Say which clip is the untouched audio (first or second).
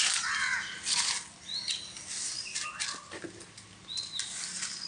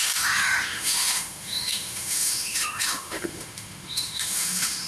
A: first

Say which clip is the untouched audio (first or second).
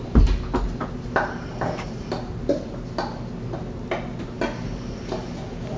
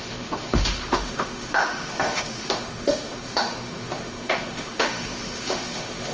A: first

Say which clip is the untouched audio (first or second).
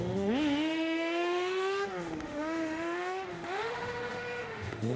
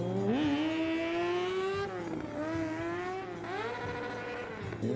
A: second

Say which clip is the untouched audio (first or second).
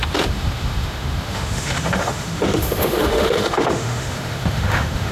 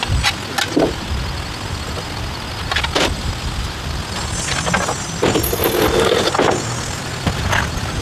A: second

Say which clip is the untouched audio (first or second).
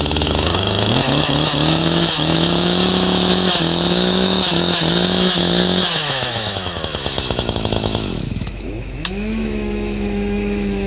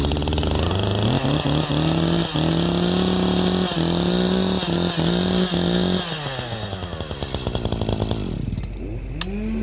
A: second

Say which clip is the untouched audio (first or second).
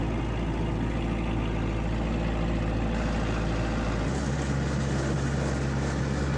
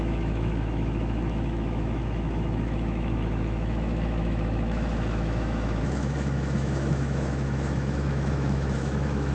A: first